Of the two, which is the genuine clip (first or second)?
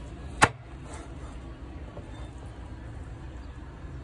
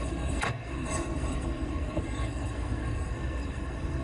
first